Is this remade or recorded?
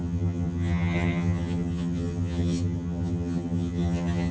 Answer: remade